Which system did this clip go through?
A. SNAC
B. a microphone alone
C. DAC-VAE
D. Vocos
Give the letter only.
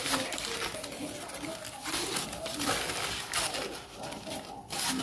B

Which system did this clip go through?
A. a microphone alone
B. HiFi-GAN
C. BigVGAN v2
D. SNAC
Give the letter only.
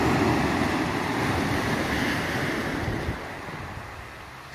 A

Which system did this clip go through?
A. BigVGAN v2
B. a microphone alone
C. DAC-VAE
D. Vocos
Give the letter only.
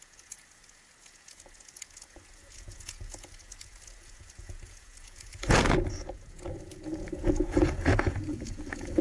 D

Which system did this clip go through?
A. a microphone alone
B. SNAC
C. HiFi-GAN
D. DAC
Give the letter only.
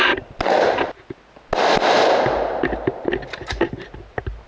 A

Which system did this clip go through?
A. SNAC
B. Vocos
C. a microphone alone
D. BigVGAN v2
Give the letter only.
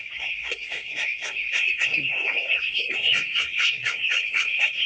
A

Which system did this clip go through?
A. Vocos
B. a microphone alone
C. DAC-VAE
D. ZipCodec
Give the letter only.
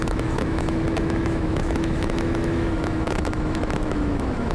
C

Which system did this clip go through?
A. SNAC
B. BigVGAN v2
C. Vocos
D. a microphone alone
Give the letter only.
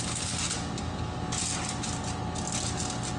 D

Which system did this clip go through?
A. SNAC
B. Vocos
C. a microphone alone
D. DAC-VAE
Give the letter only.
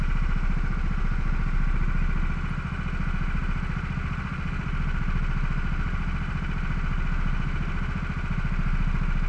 C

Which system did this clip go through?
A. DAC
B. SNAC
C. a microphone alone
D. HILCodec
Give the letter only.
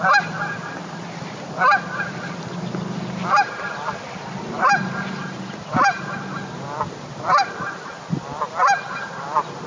C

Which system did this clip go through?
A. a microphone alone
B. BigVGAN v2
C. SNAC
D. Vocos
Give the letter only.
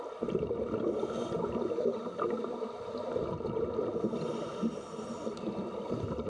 A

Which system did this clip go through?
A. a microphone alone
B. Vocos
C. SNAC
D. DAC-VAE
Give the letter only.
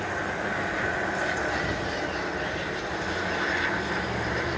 A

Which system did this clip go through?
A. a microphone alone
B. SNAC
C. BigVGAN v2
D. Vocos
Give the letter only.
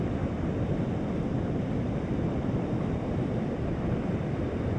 C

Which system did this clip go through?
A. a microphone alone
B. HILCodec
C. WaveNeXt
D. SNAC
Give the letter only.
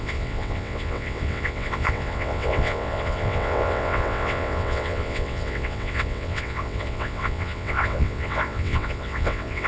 C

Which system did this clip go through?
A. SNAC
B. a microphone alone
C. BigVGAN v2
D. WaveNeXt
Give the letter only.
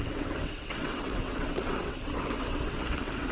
D